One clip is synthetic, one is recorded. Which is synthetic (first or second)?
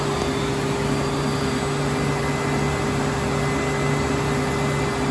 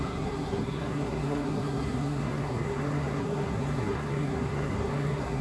second